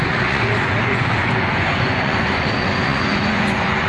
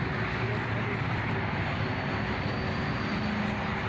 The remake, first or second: first